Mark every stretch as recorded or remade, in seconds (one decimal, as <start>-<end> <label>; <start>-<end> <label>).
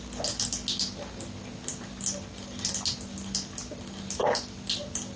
0.0-5.2 recorded